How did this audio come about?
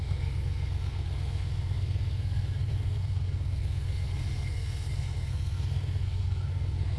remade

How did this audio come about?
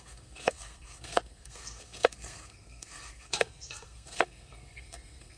remade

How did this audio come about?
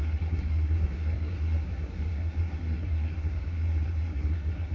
remade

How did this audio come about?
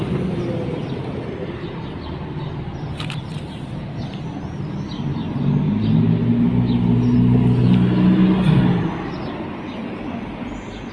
recorded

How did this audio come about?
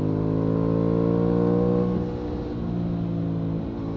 recorded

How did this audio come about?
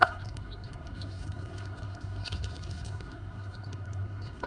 remade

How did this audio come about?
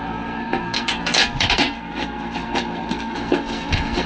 remade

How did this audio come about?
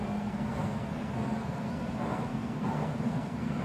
remade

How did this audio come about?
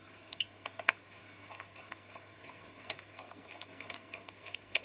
remade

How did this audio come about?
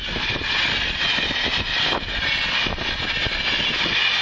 recorded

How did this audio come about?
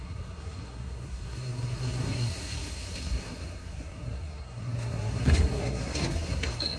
remade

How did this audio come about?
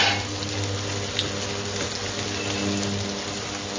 recorded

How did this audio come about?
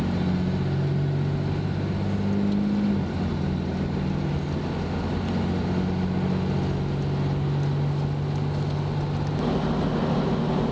recorded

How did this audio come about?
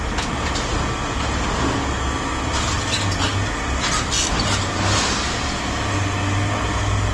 recorded